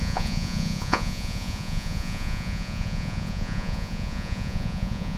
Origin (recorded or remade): remade